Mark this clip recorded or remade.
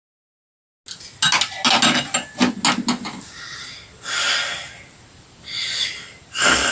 recorded